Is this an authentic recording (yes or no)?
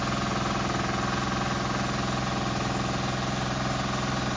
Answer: yes